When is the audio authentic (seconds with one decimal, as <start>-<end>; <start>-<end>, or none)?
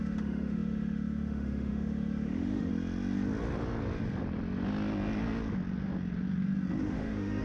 2.7-6.8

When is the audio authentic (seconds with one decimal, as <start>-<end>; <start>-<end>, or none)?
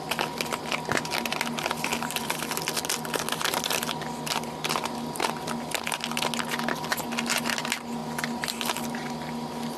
0.0-2.2; 5.3-8.0; 9.1-9.8